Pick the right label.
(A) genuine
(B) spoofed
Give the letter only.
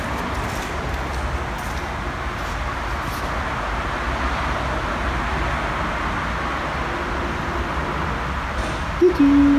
A